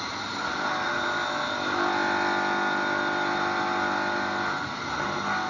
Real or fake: real